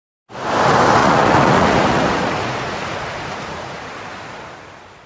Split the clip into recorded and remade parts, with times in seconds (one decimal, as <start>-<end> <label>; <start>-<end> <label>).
0.0-1.0 recorded; 1.0-3.9 remade; 3.9-5.1 recorded